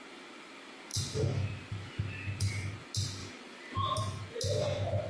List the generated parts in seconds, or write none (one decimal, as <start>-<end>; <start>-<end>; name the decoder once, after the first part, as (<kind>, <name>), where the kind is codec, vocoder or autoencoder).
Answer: 3.2-4.0 (vocoder, BigVGAN v2)